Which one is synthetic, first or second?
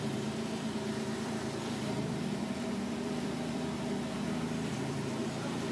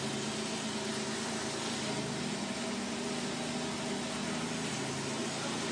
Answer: first